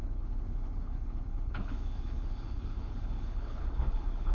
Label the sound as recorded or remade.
remade